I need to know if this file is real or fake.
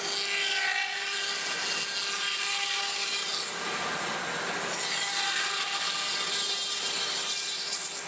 real